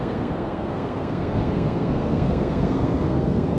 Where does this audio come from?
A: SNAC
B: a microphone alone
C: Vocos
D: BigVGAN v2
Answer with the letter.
A